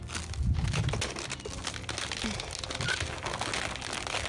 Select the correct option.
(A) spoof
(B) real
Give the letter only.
B